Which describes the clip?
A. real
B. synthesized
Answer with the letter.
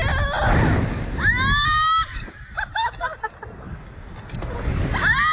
A